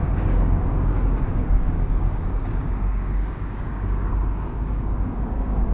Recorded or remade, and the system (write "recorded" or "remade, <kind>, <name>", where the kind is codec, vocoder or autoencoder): remade, codec, DAC